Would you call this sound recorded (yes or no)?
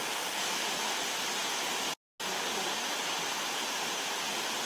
yes